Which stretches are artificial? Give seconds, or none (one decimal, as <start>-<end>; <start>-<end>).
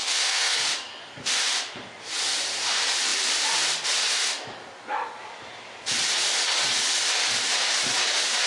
0.0-0.7